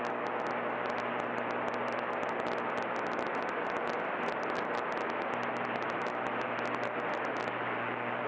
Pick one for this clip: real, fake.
real